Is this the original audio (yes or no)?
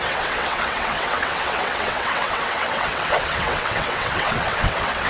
no